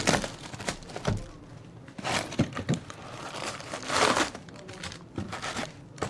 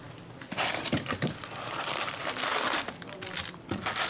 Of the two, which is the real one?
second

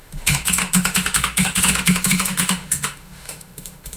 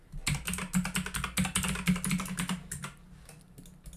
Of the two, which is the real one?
second